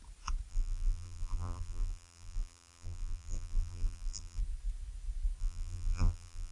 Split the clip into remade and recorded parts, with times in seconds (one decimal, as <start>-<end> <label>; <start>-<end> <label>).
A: 0.0-0.5 recorded; 0.5-4.4 remade; 4.4-5.4 recorded; 5.4-6.5 remade